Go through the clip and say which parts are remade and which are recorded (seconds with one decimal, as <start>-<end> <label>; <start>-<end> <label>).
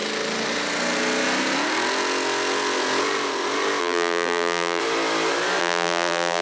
0.0-3.8 recorded; 3.8-4.8 remade; 4.8-5.6 recorded; 5.6-6.4 remade